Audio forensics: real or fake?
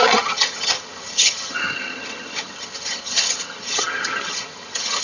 fake